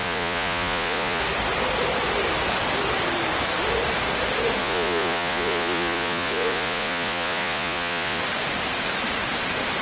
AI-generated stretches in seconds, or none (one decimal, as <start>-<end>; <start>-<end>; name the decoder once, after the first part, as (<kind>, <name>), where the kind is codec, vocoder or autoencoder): 0.0-1.2 (vocoder, Vocos); 4.6-8.2